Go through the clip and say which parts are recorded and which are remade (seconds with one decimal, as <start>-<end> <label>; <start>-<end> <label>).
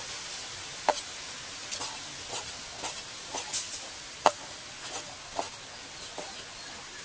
0.0-7.0 recorded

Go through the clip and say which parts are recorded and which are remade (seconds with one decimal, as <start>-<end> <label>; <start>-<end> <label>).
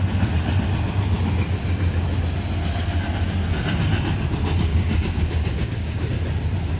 0.0-4.7 recorded; 4.7-6.1 remade; 6.1-6.8 recorded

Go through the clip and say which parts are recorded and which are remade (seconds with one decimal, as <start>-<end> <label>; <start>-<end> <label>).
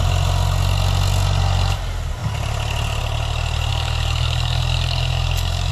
0.0-3.7 recorded; 3.7-5.7 remade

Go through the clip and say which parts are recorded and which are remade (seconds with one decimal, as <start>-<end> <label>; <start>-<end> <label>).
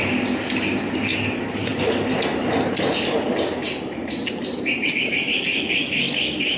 0.0-5.5 recorded; 5.5-6.6 remade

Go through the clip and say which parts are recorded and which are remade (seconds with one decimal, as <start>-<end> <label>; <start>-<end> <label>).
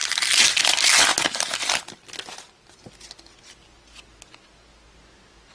0.0-5.5 recorded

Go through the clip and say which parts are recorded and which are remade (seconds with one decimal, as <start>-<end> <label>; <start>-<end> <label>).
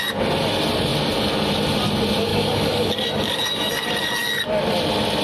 0.0-2.3 recorded; 2.3-2.9 remade; 2.9-5.2 recorded